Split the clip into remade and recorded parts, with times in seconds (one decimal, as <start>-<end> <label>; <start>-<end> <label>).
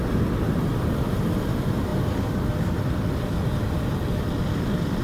0.0-5.0 recorded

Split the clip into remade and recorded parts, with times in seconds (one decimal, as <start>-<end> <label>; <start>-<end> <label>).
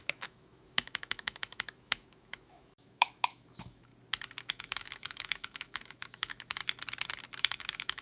0.0-3.9 remade; 3.9-4.4 recorded; 4.4-6.6 remade; 6.6-7.4 recorded; 7.4-8.0 remade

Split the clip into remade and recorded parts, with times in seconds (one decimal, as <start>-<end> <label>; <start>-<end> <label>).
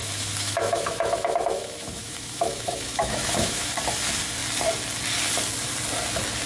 0.0-3.7 remade; 3.7-6.5 recorded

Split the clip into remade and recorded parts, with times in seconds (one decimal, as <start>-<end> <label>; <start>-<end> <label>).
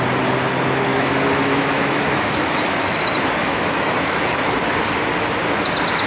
0.0-0.9 recorded; 0.9-3.0 remade; 3.0-3.4 recorded; 3.4-4.6 remade; 4.6-6.1 recorded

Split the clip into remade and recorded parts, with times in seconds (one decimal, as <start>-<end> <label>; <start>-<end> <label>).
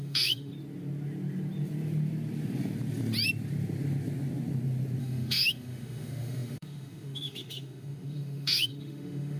0.0-0.5 remade; 0.5-5.0 recorded; 5.0-9.4 remade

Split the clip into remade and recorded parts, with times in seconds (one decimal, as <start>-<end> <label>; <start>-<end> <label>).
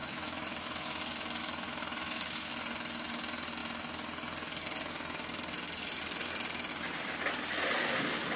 0.0-1.0 remade; 1.0-1.4 recorded; 1.4-2.5 remade; 2.5-8.4 recorded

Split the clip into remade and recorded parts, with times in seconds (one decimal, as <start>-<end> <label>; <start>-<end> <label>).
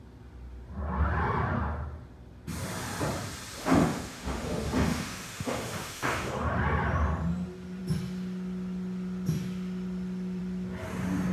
0.0-3.6 recorded; 3.6-6.3 remade; 6.3-11.3 recorded